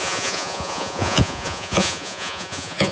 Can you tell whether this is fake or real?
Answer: fake